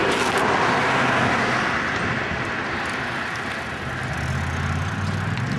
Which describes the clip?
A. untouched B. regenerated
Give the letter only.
A